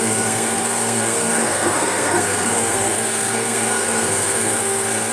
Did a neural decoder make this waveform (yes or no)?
yes